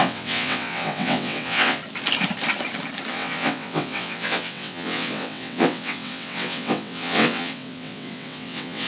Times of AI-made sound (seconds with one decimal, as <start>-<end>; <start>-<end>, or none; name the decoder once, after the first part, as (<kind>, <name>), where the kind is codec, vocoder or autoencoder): 0.0-1.8 (vocoder, WaveNeXt); 3.1-8.9